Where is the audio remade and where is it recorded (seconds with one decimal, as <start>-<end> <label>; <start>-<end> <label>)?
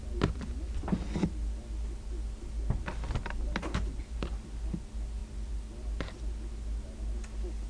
0.0-7.7 recorded